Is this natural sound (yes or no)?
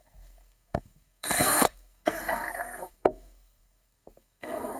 no